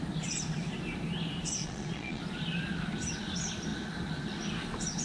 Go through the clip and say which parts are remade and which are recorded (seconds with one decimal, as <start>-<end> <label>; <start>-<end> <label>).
0.0-1.6 recorded; 1.6-2.2 remade; 2.2-5.0 recorded